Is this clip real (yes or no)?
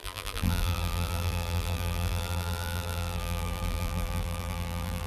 no